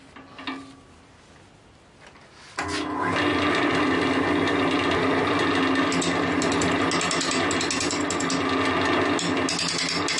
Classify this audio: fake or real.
real